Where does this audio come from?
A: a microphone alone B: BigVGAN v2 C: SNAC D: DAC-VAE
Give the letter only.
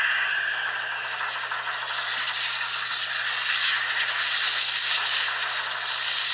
A